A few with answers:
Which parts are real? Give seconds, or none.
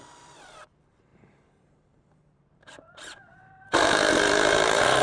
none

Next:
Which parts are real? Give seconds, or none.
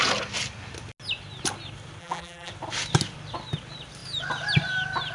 0.0-2.0; 2.5-5.1